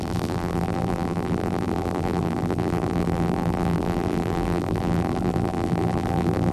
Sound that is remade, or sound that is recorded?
remade